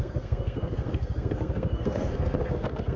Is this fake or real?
fake